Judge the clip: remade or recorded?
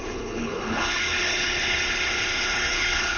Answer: remade